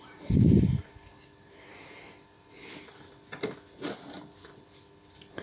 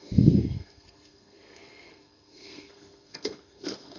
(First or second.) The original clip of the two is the first